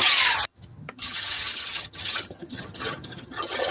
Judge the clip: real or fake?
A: fake